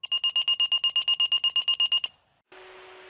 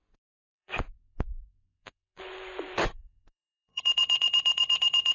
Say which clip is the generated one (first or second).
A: second